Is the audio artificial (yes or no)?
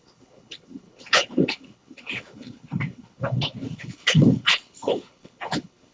yes